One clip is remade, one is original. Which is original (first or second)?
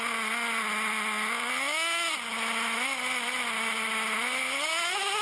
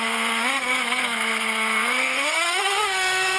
first